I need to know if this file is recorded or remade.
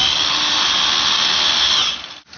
recorded